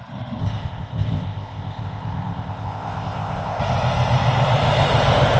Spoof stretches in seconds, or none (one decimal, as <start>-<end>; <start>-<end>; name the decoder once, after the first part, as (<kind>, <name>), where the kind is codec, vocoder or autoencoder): 0.4-3.6 (codec, ZipCodec)